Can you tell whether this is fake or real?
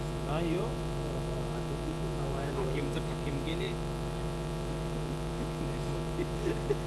fake